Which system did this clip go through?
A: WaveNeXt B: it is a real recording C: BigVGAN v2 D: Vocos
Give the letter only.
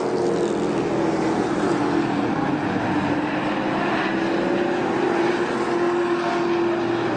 B